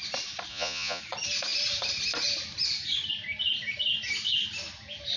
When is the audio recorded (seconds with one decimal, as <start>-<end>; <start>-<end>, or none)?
0.0-0.5; 1.0-5.2